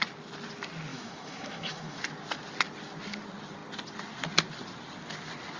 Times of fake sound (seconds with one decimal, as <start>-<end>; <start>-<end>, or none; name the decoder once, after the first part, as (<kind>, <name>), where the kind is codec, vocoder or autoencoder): 0.9-2.0 (autoencoder, DAC-VAE)